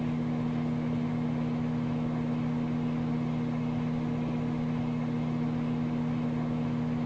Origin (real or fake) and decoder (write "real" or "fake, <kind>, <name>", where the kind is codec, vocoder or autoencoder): real